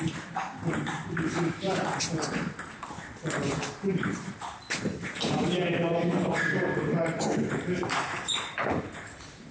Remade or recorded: remade